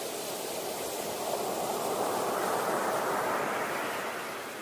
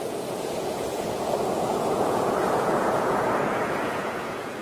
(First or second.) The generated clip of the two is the second